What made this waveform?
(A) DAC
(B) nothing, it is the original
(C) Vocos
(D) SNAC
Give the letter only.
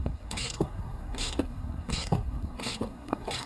D